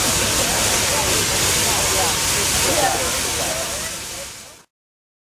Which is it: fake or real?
real